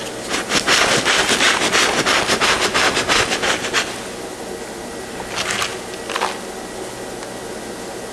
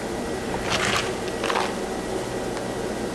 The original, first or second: first